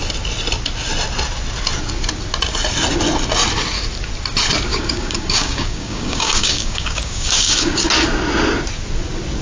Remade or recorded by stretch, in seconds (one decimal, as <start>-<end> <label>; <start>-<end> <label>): 0.0-4.7 recorded; 4.7-7.9 remade; 7.9-9.4 recorded